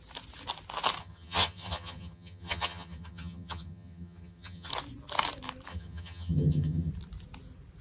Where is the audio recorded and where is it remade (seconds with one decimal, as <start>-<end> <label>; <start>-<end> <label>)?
0.0-1.0 recorded; 1.0-4.7 remade; 4.7-5.7 recorded; 5.7-6.9 remade; 6.9-7.8 recorded